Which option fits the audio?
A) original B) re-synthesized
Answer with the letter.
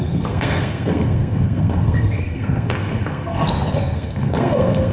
B